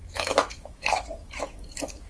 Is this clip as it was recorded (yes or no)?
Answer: no